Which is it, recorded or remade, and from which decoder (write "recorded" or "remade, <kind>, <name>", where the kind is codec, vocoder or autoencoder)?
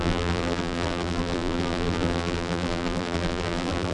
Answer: remade, vocoder, BigVGAN v2